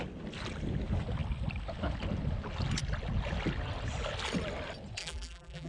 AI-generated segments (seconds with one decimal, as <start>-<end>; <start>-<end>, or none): 5.0-5.7

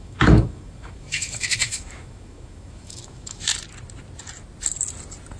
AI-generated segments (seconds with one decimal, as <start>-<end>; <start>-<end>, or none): 0.0-3.5

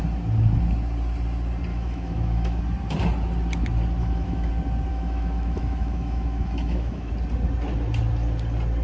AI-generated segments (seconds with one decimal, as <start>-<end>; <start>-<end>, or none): 1.7-2.6; 4.0-4.5; 4.9-7.1